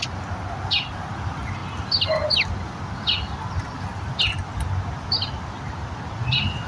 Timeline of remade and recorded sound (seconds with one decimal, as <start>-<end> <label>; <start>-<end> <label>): 0.0-6.7 recorded